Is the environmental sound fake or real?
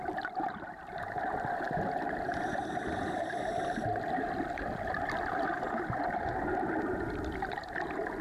real